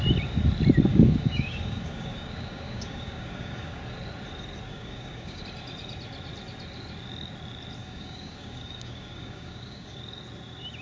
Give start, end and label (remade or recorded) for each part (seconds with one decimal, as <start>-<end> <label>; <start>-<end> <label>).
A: 0.0-0.9 recorded; 0.9-3.8 remade; 3.8-4.7 recorded; 4.7-5.4 remade; 5.4-7.8 recorded; 7.8-10.0 remade; 10.0-10.8 recorded